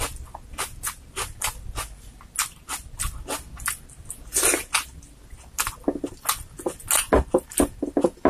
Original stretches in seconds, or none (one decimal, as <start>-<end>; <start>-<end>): 0.0-8.3